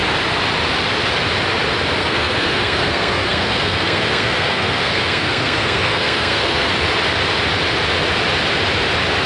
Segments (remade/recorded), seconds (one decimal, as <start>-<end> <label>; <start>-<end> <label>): 0.0-2.0 recorded; 2.0-6.7 remade; 6.7-9.3 recorded